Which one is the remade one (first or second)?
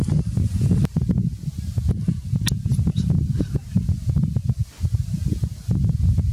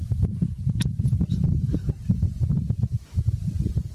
second